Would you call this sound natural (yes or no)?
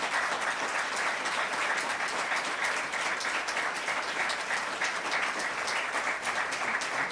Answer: no